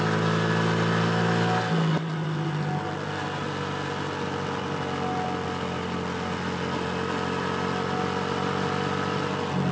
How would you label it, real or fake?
real